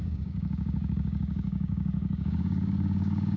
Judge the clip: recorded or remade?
remade